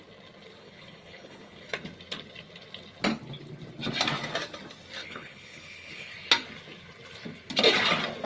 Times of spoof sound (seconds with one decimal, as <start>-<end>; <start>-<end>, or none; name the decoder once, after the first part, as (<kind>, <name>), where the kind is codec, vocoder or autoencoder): 0.6-1.7 (codec, HILCodec); 5.0-6.1